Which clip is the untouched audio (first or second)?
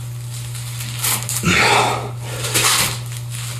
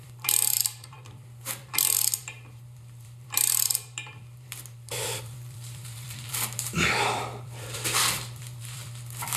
first